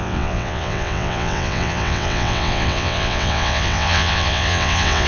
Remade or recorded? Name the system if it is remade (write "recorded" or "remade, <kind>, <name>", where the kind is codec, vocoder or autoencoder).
remade, vocoder, WaveNeXt